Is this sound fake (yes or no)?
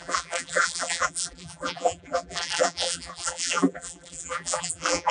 yes